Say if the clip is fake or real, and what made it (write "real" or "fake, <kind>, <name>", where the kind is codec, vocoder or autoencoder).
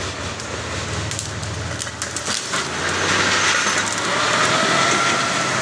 real